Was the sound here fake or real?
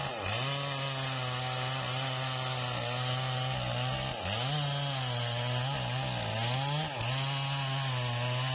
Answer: real